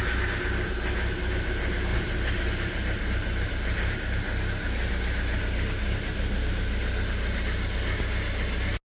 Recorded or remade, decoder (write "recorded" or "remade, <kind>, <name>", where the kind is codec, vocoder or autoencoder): recorded